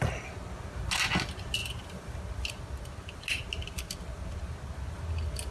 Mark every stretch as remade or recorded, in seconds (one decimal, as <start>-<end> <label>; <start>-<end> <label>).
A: 0.0-5.5 recorded